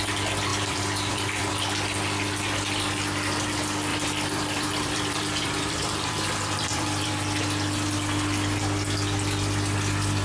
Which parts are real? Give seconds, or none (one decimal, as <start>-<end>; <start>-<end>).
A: 0.0-0.5; 1.5-3.9; 7.1-10.2